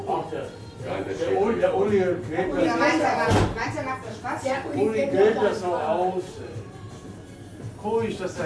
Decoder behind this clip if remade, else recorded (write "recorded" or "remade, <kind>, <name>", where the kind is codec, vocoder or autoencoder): recorded